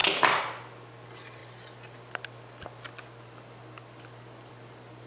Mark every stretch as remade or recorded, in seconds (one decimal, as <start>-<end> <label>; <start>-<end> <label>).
0.0-5.1 recorded